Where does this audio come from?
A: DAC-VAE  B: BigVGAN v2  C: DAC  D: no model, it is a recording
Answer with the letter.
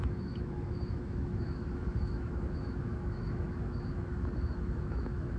A